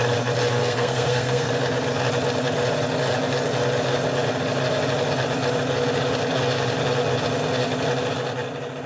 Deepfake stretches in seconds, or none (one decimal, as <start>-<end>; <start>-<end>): 0.6-1.5